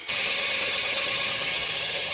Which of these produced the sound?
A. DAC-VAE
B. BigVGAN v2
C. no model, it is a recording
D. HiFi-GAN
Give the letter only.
D